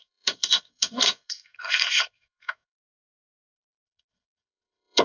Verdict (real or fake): fake